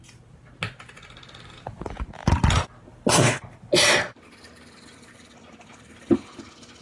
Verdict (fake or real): real